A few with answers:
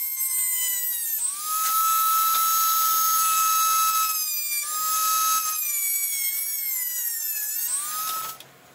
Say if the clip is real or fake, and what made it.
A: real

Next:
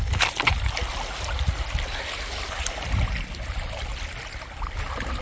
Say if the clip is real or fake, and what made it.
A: real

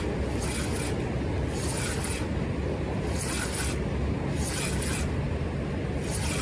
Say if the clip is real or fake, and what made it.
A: real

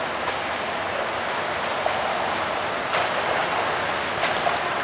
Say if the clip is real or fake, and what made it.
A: real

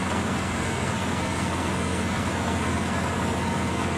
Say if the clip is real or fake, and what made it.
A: fake, codec, SNAC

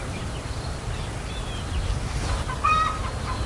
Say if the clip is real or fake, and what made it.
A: real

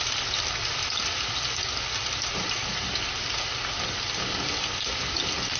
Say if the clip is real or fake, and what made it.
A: real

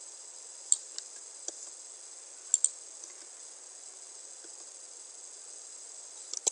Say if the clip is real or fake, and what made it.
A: real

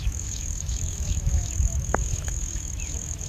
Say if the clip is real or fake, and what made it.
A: fake, autoencoder, DAC-VAE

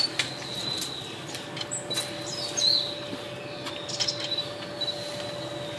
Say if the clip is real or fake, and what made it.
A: real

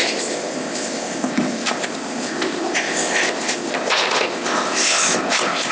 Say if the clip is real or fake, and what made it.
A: fake, codec, ZipCodec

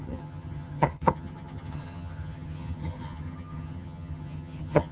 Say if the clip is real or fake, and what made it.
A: fake, vocoder, HiFi-GAN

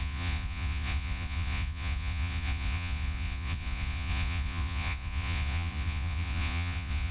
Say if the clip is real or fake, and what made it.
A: fake, vocoder, Vocos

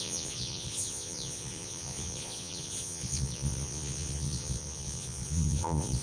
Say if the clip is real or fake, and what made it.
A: fake, vocoder, Vocos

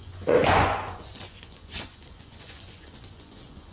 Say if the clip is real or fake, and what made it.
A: fake, vocoder, Vocos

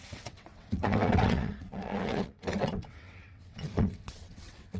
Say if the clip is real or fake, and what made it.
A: fake, vocoder, WaveNeXt